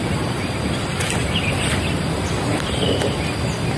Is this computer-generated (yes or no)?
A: no